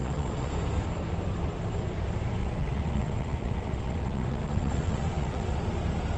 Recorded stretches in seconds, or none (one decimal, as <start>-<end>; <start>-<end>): 0.5-2.4; 5.6-6.2